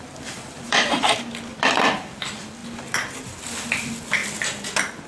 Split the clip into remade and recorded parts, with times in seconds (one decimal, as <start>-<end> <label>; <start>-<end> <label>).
0.0-4.2 remade; 4.2-5.1 recorded